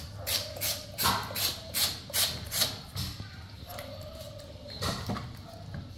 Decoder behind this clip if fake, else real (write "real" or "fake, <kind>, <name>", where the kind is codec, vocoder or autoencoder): real